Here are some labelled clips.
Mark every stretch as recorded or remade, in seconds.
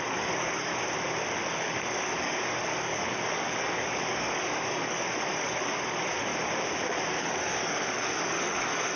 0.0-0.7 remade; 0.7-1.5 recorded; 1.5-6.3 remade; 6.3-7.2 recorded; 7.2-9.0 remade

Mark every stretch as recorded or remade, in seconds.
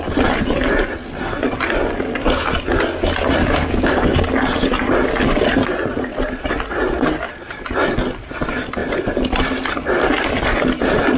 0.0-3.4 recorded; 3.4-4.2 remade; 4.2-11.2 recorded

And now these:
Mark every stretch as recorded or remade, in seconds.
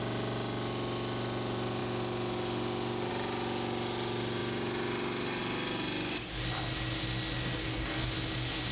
0.0-7.6 recorded; 7.6-8.1 remade; 8.1-8.7 recorded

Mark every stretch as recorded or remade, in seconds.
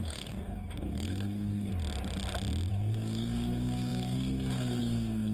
0.0-1.7 remade; 1.7-2.7 recorded; 2.7-5.3 remade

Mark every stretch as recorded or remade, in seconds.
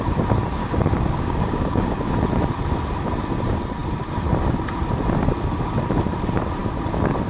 0.0-0.6 recorded; 0.6-2.1 remade; 2.1-7.3 recorded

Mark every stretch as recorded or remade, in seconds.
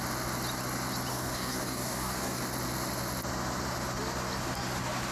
0.0-1.1 recorded; 1.1-2.4 remade; 2.4-5.1 recorded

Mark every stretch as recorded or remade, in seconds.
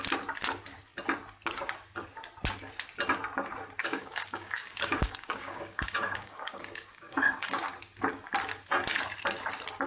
0.0-3.8 recorded; 3.8-7.7 remade; 7.7-9.9 recorded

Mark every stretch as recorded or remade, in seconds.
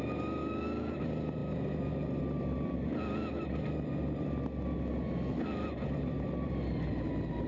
0.0-0.4 recorded; 0.4-1.0 remade; 1.0-7.5 recorded